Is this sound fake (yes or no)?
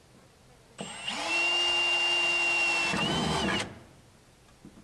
no